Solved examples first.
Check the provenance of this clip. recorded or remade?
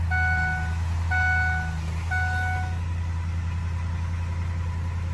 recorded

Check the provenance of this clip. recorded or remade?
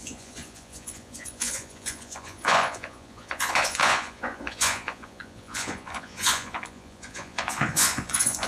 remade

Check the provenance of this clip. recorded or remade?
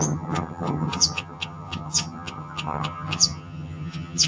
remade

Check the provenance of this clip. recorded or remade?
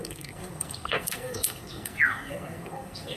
remade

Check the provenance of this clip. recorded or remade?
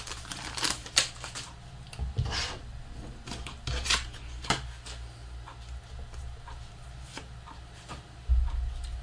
recorded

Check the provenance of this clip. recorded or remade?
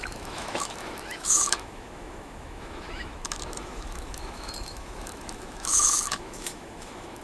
remade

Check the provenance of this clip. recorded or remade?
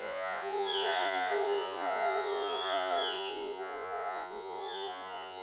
remade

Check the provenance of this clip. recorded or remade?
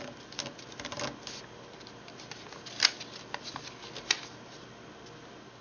recorded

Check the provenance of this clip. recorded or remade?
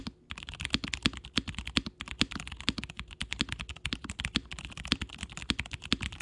recorded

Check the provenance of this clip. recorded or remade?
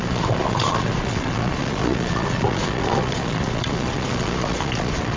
remade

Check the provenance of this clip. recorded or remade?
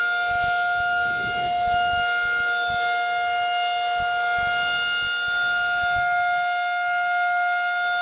recorded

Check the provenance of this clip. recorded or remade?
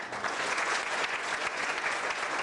remade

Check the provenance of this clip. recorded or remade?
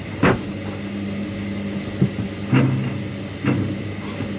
recorded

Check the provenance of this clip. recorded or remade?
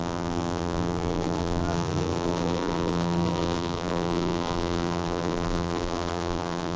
remade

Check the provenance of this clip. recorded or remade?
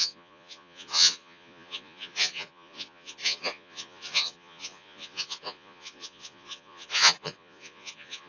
remade